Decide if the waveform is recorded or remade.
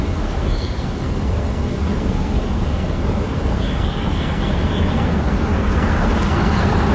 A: remade